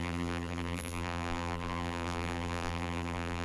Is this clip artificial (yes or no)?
yes